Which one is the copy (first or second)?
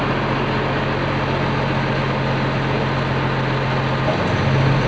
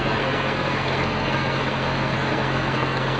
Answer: second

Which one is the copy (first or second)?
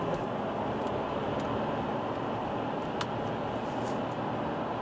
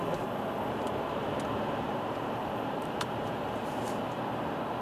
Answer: second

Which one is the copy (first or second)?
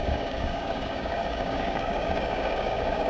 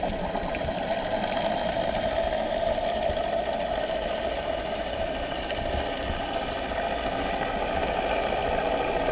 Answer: first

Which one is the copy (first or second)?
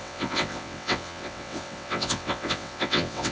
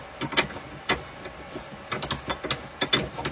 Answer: first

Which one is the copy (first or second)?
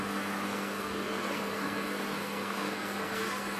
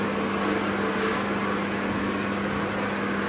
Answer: first